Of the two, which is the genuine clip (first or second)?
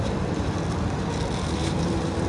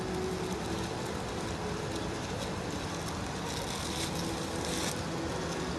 second